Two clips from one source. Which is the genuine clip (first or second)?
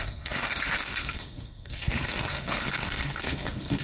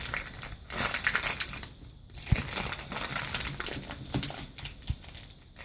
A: second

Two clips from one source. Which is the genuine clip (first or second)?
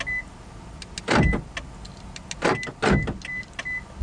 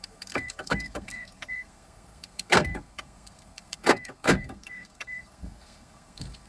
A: first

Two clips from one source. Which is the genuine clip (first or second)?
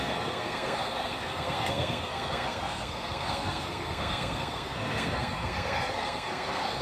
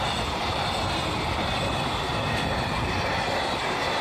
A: second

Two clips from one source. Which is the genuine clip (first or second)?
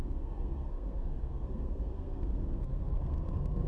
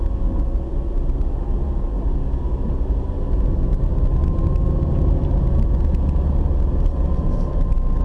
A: second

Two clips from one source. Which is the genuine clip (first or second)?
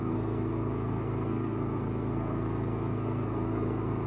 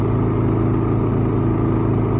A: second